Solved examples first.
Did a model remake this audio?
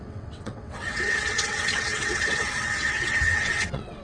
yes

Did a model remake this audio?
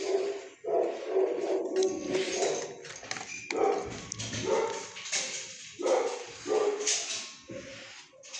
no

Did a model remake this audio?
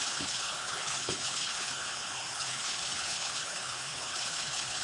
yes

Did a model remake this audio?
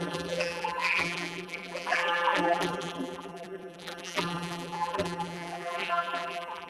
yes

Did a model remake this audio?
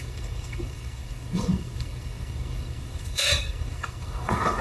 yes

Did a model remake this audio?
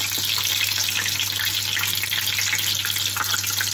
no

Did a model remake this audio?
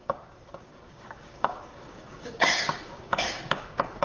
yes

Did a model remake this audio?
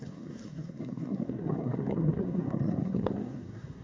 yes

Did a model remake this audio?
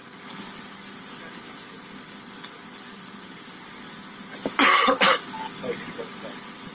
no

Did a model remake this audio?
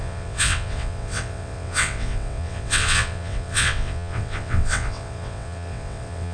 yes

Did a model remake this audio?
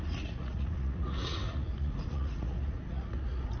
yes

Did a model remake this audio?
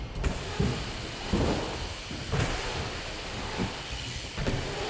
no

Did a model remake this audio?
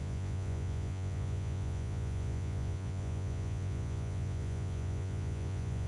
yes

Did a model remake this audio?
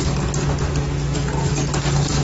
no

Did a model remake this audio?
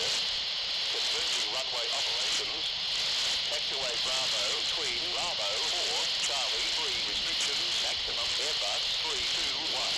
no